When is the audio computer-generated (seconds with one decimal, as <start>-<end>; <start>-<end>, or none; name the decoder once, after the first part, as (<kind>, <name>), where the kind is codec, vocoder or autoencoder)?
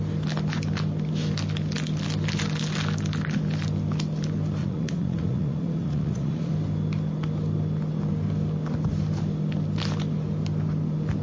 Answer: 4.6-6.5 (vocoder, Vocos)